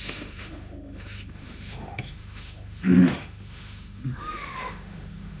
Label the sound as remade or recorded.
remade